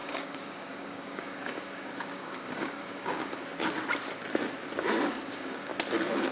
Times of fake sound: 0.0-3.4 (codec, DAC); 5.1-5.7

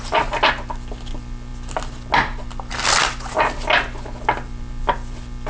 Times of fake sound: none

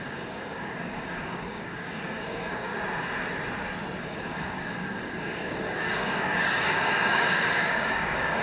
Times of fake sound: 0.0-2.7 (codec, DAC); 4.0-8.4

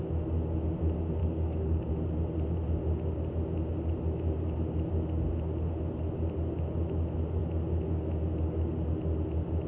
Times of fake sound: 1.2-1.9 (codec, DAC)

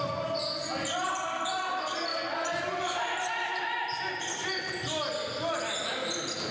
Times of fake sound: none

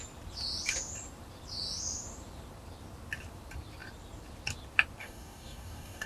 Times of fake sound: 5.0-6.1 (codec, DAC)

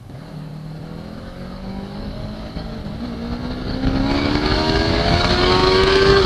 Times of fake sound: 0.0-0.5 (codec, DAC); 1.2-2.8; 3.5-6.3

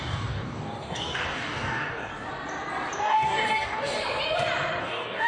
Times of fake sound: 0.0-2.1 (codec, DAC); 3.0-4.0; 4.8-5.3